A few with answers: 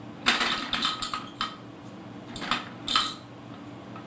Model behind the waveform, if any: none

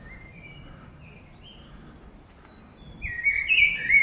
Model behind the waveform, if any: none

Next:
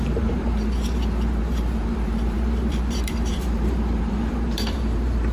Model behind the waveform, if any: vocoder, BigVGAN v2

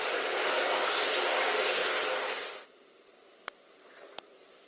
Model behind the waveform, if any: none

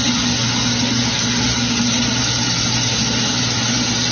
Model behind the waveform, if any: none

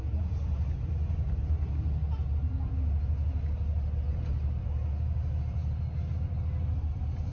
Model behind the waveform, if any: none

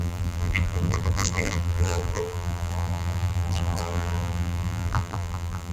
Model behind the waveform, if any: vocoder, BigVGAN v2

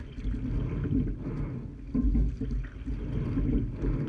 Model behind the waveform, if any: none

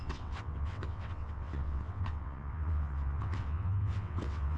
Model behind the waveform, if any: vocoder, WaveNeXt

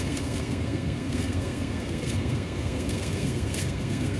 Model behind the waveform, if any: codec, SNAC